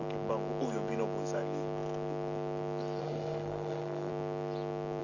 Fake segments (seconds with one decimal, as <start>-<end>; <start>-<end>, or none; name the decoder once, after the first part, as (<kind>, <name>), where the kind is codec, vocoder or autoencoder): 3.0-4.1 (codec, SNAC)